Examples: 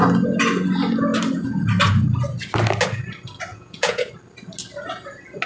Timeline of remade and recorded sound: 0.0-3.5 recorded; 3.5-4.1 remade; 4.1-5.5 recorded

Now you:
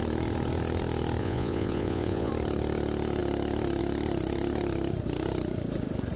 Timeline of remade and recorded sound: 0.0-1.2 recorded; 1.2-2.3 remade; 2.3-6.2 recorded

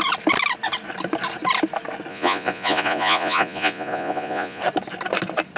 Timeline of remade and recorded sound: 0.0-2.1 recorded; 2.1-4.6 remade; 4.6-5.6 recorded

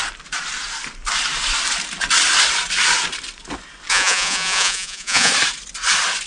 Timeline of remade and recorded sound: 0.0-3.9 recorded; 3.9-5.3 remade; 5.3-6.3 recorded

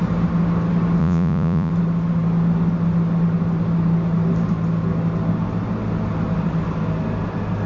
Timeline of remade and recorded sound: 0.0-1.0 recorded; 1.0-1.7 remade; 1.7-7.7 recorded

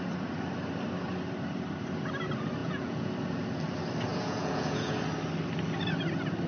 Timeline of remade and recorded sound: 0.0-2.6 recorded; 2.6-3.1 remade; 3.1-4.1 recorded; 4.1-5.0 remade; 5.0-6.5 recorded